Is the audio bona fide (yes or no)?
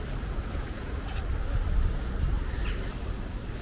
yes